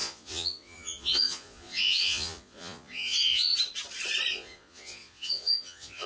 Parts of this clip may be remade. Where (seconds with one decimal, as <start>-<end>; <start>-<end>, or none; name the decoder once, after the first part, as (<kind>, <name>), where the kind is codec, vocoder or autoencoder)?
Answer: 0.0-3.5 (vocoder, Vocos); 4.3-6.1

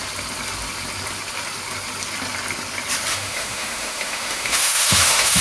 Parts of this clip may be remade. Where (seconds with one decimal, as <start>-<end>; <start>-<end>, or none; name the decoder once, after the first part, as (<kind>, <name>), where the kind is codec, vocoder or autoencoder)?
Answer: 3.1-5.4 (autoencoder, DAC-VAE)

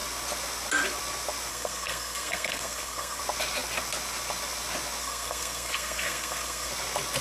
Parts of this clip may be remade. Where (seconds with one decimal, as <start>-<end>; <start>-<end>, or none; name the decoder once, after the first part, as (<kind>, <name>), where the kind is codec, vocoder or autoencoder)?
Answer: 1.5-3.2 (codec, SNAC); 5.0-6.7

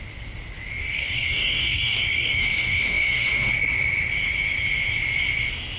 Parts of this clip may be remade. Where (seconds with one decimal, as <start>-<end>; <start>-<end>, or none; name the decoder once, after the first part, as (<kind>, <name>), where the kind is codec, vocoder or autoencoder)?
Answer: 0.8-3.5 (codec, DAC)

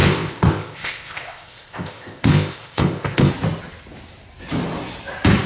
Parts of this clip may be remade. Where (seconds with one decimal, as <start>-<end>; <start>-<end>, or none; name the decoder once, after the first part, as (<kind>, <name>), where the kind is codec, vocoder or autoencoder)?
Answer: 0.0-3.3 (codec, ZipCodec)